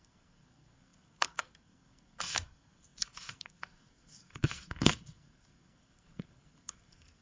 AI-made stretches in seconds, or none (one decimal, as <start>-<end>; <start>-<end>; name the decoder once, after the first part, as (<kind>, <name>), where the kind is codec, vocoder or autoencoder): 0.0-7.2 (codec, SNAC)